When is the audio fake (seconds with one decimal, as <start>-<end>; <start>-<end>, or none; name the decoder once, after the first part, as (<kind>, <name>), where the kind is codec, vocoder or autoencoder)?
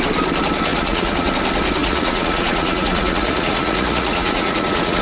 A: 0.7-1.3 (vocoder, Vocos); 1.8-5.0